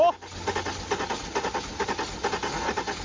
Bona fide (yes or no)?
yes